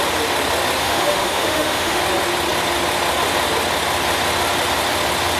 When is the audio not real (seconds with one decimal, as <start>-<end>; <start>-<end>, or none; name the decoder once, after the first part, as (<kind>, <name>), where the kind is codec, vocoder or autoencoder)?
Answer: 0.8-2.0 (autoencoder, DAC-VAE)